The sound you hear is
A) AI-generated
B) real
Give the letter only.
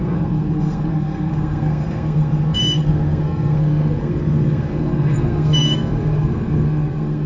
A